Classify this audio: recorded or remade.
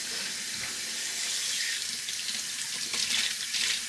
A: recorded